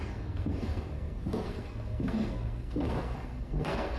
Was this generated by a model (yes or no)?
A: yes